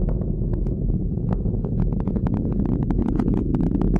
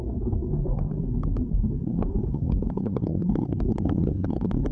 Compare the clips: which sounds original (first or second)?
first